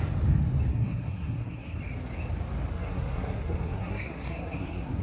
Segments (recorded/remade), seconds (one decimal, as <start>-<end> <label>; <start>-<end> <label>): 0.0-0.7 recorded; 0.7-1.8 remade; 1.8-2.7 recorded; 2.7-5.0 remade